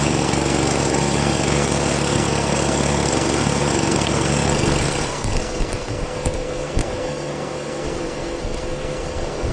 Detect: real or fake fake